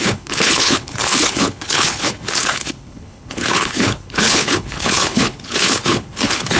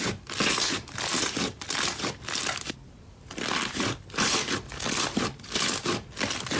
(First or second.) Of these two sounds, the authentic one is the second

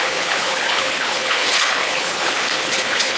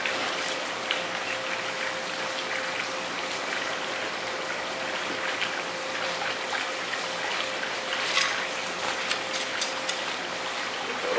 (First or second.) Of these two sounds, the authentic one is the second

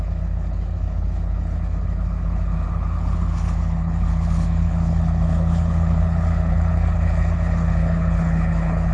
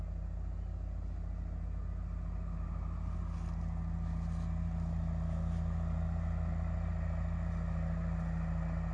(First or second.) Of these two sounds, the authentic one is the second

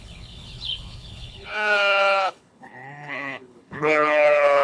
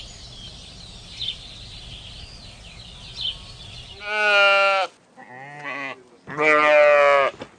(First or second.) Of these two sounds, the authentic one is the second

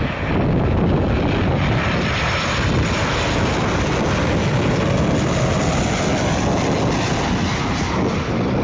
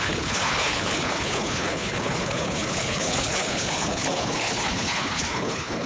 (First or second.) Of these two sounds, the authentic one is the first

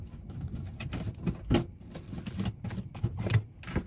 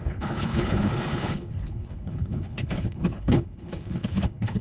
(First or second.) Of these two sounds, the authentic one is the first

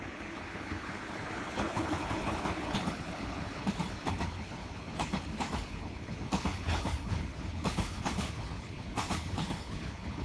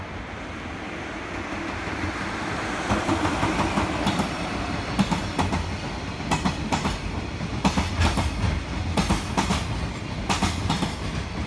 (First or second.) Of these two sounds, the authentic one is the second